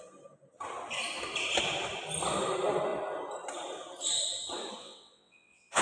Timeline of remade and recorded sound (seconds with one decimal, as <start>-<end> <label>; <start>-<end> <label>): 0.0-4.8 recorded; 4.8-5.8 remade